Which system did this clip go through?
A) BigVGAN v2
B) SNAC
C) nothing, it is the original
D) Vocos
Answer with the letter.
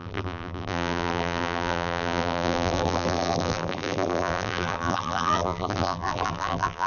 A